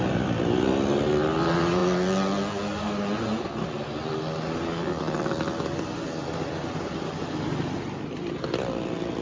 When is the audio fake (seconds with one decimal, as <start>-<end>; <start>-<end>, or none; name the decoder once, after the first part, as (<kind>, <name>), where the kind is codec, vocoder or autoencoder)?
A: none